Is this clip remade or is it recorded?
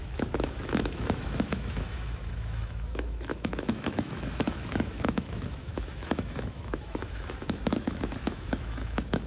remade